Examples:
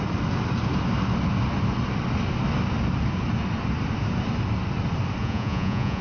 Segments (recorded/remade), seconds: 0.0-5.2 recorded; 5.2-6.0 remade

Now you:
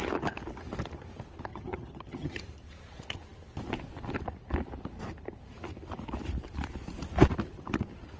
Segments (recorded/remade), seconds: 0.0-1.5 recorded; 1.5-2.4 remade; 2.4-8.2 recorded

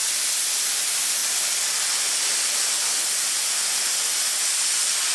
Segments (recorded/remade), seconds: 0.0-5.1 recorded

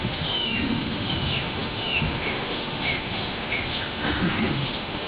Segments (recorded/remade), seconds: 0.0-5.1 remade

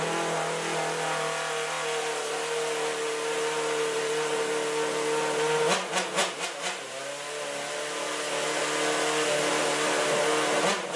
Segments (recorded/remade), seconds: 0.0-11.0 recorded